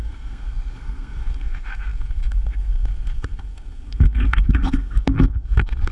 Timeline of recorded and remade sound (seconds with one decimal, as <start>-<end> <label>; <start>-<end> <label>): 0.0-5.9 remade